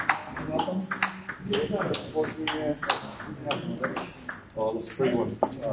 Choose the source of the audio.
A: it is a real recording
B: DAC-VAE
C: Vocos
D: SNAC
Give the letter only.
A